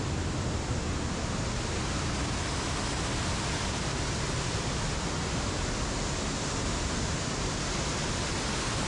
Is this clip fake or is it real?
real